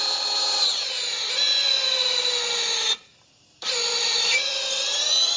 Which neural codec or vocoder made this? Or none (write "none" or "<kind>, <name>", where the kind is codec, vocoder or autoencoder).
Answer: none